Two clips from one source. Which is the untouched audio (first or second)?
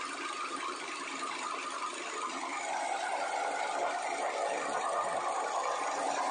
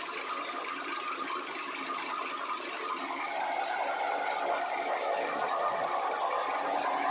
second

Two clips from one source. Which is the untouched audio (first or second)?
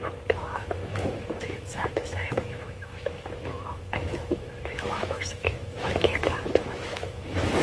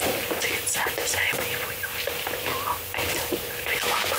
second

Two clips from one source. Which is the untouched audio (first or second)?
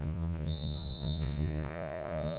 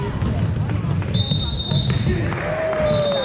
second